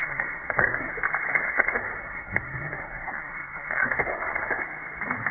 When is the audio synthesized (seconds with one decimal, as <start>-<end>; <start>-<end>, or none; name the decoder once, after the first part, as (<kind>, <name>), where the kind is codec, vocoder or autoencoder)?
0.0-0.9 (codec, SNAC); 1.4-4.6